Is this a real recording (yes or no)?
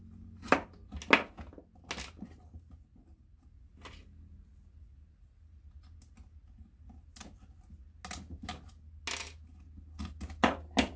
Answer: yes